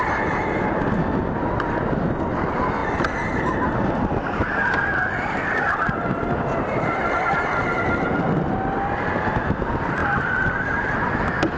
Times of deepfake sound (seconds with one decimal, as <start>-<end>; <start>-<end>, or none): none